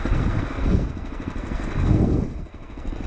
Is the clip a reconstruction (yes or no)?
yes